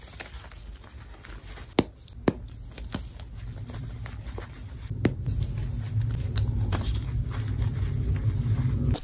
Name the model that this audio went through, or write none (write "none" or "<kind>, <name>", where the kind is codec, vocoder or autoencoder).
none